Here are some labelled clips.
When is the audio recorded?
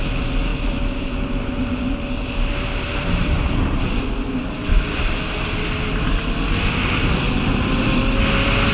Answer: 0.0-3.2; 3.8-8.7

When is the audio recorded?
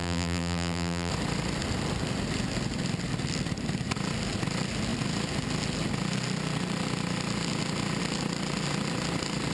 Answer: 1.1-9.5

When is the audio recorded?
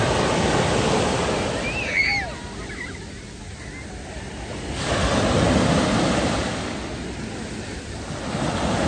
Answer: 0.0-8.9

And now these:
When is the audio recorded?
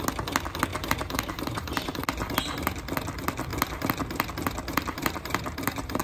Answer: 0.0-0.7; 1.9-4.7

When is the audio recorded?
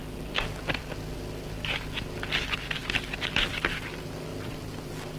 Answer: 0.0-5.2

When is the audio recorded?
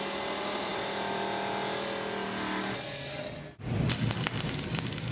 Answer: 0.0-5.1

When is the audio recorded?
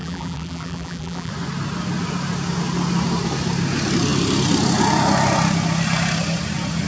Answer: 1.3-6.9